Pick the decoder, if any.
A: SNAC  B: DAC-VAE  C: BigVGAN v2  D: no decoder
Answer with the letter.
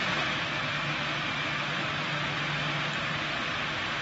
D